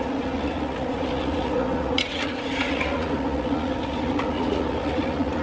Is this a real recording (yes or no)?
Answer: no